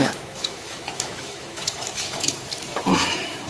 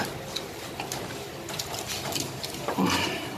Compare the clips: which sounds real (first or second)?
second